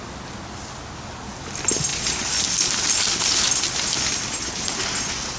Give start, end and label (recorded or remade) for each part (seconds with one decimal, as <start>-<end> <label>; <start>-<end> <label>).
0.0-5.4 recorded